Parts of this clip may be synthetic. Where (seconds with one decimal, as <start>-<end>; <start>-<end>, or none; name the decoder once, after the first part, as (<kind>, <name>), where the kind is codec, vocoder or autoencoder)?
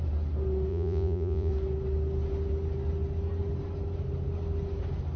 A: 0.7-1.5 (vocoder, Vocos)